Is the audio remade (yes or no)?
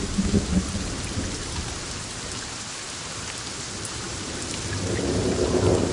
no